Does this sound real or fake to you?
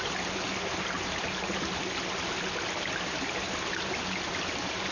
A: real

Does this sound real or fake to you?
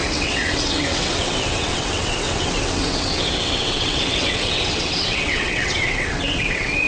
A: fake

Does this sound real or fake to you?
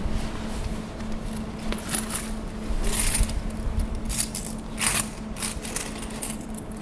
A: real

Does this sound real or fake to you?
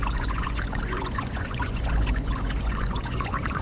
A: fake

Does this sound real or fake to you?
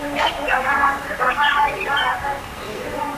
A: fake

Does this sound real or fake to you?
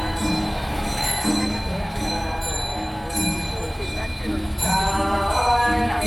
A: fake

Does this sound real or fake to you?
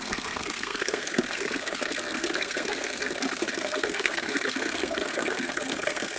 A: fake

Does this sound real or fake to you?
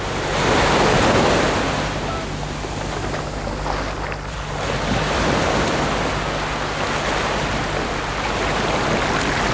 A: real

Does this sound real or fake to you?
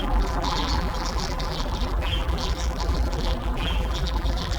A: fake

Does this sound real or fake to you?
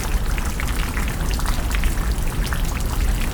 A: real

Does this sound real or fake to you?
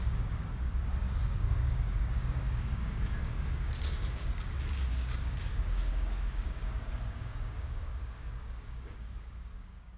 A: fake